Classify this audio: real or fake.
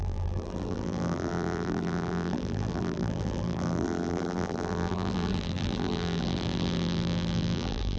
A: fake